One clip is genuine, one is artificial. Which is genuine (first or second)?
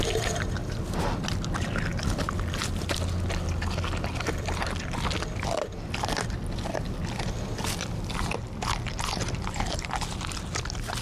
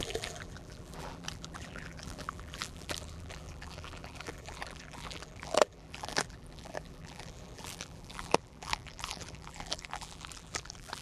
first